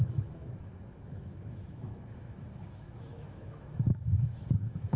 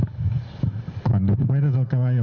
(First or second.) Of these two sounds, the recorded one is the second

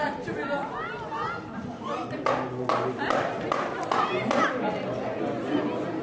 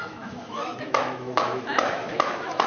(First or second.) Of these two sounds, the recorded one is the first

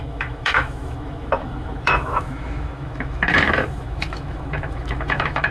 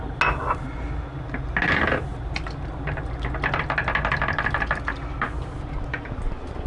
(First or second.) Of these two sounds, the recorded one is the second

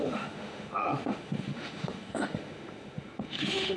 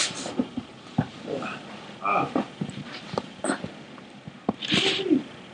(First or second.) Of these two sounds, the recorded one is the second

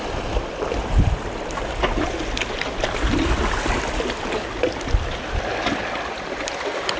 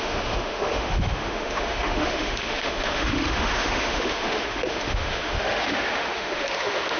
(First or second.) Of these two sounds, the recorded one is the first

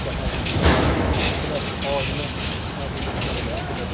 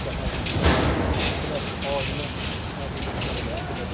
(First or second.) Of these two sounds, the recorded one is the second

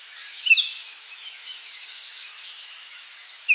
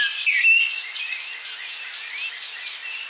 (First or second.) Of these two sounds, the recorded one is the second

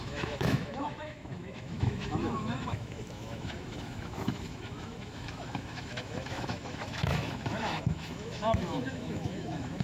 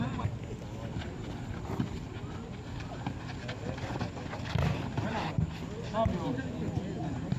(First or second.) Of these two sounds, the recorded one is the second